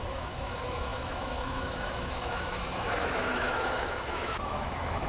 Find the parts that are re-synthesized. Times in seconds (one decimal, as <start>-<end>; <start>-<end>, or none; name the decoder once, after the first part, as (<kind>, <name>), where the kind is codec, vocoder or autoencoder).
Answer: 0.0-5.1 (autoencoder, DAC-VAE)